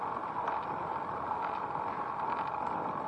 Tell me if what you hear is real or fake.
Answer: real